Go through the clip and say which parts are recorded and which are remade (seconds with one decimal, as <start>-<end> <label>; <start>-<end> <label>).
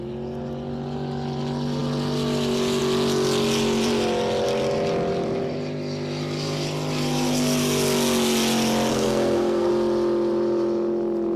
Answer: 0.0-8.9 recorded; 8.9-9.7 remade; 9.7-11.4 recorded